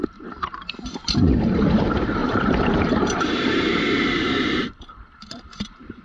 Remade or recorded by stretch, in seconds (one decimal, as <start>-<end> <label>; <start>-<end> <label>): 0.0-2.2 recorded; 2.2-6.0 remade